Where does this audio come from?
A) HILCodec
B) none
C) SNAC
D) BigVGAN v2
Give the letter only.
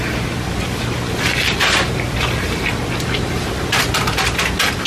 B